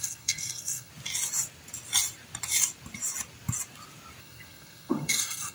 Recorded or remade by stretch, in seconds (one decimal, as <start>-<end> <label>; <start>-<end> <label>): 0.0-0.9 remade; 0.9-4.2 recorded; 4.2-5.5 remade